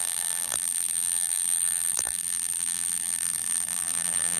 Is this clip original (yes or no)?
no